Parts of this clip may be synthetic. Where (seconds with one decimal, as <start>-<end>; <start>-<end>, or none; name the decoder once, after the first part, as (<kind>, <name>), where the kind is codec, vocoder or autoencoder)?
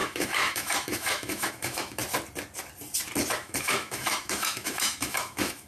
0.0-2.0 (autoencoder, DAC-VAE); 3.3-5.7